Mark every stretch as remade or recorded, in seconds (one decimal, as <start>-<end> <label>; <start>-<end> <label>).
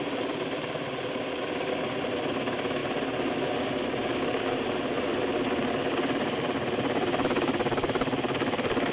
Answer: 0.0-8.9 recorded